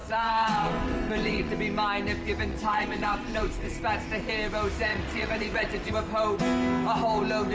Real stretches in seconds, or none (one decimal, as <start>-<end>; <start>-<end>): 1.5-2.5; 3.8-4.9; 5.9-7.5